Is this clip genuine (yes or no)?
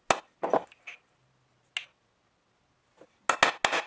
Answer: yes